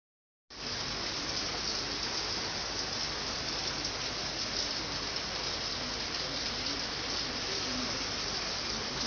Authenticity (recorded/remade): recorded